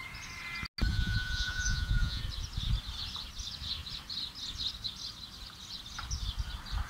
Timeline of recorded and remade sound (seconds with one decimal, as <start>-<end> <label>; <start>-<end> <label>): 0.0-0.9 recorded; 0.9-2.2 remade; 2.2-6.9 recorded